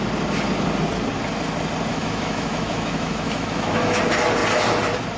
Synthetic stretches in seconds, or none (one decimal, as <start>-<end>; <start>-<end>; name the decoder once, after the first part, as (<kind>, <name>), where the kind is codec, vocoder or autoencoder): 1.9-4.0 (autoencoder, DAC-VAE)